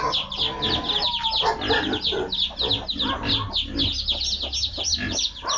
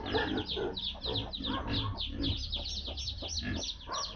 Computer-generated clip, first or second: second